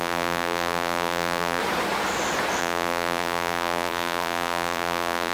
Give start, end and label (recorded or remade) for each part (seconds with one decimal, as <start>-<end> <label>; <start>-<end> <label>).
0.0-1.6 remade; 1.6-2.6 recorded; 2.6-5.3 remade